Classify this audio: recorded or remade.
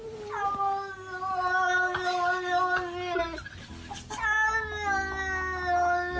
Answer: recorded